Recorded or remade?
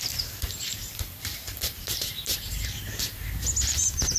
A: remade